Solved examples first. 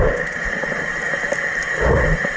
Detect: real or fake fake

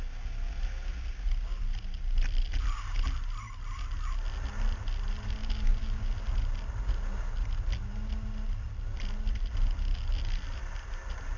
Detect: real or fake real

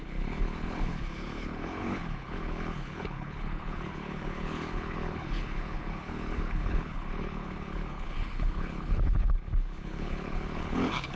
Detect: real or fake fake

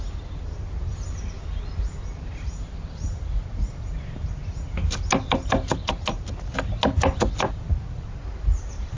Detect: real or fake real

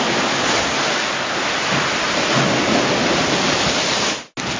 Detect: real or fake real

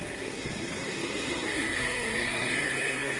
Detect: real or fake fake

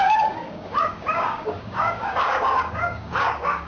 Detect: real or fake fake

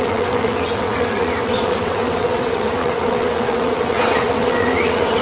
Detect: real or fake fake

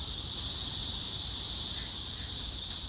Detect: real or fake fake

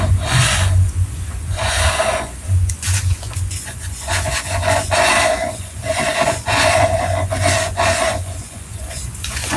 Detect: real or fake fake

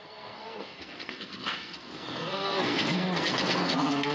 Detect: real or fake fake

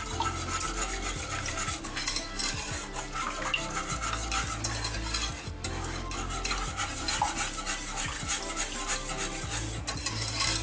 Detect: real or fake real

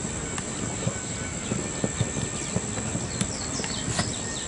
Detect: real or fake real